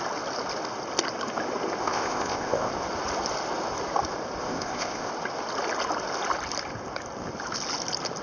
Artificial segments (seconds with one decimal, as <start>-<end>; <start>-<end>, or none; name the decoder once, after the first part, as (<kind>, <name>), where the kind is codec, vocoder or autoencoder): 1.8-2.7 (codec, ZipCodec); 4.4-5.1